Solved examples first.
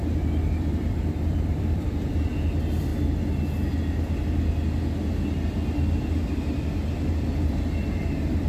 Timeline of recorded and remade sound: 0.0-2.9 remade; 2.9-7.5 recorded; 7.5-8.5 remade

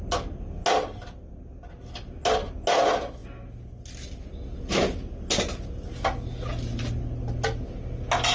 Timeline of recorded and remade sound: 0.0-8.3 recorded